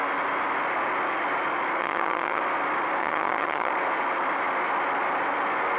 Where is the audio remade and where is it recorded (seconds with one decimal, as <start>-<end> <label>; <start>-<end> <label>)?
0.0-1.8 recorded; 1.8-2.4 remade; 2.4-3.0 recorded; 3.0-3.7 remade; 3.7-5.8 recorded